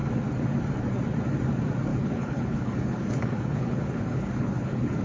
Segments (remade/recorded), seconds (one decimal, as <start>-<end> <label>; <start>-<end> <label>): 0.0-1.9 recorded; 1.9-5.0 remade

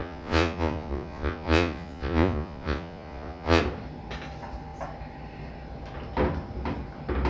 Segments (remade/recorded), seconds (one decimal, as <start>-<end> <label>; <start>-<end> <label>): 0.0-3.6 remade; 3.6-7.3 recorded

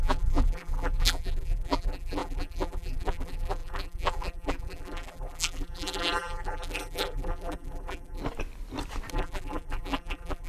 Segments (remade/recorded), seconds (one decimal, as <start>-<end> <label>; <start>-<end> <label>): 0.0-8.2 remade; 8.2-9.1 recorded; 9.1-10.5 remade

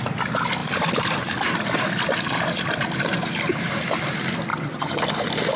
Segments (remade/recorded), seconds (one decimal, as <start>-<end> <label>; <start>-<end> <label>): 0.0-4.5 recorded; 4.5-5.0 remade; 5.0-5.6 recorded

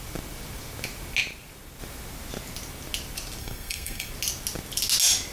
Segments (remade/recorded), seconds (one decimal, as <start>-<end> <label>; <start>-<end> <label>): 0.0-3.4 recorded; 3.4-4.1 remade; 4.1-5.3 recorded